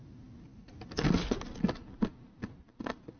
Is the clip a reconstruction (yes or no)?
no